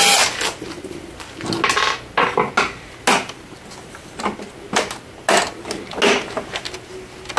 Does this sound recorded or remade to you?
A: recorded